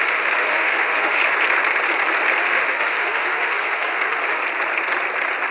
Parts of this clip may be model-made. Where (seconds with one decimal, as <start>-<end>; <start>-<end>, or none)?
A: 0.0-1.2; 2.4-4.4